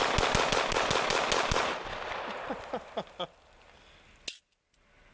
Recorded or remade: recorded